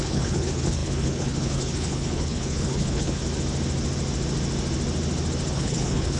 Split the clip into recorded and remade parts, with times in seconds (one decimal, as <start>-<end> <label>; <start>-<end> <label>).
0.0-3.2 remade; 3.2-5.5 recorded; 5.5-6.2 remade